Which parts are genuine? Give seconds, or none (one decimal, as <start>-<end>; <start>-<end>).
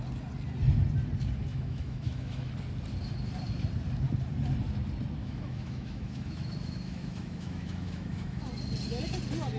0.0-1.5; 2.5-5.2; 8.5-9.6